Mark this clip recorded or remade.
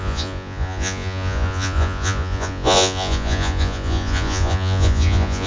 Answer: remade